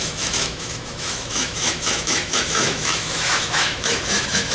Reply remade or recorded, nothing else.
remade